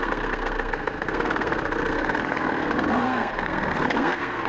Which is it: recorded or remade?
remade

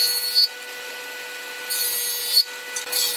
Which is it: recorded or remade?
recorded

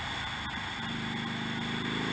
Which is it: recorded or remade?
recorded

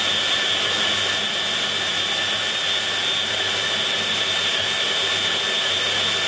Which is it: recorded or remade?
recorded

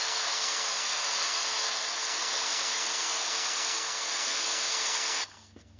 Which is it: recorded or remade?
remade